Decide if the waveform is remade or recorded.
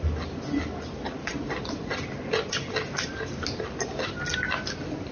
recorded